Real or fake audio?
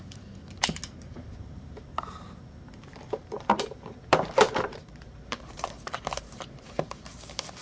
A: fake